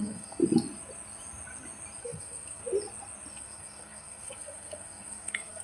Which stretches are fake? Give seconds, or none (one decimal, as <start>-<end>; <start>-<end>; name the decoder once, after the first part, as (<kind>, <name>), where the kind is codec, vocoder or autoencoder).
0.0-0.4 (codec, SNAC); 2.0-2.6; 3.3-5.6